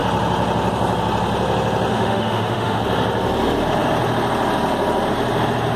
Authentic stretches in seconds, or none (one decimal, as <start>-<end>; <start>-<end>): 0.0-1.9; 2.8-5.8